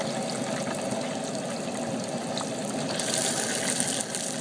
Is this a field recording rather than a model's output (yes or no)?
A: yes